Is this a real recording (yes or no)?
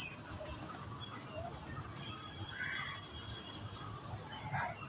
yes